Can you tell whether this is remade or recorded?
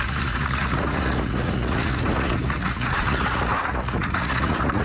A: remade